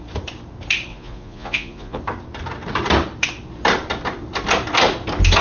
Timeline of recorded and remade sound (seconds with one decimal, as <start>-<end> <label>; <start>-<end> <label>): 0.0-0.9 recorded; 0.9-2.0 remade; 2.0-5.4 recorded